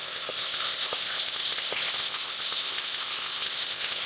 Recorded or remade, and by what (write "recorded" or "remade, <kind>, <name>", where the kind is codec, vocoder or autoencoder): remade, codec, ZipCodec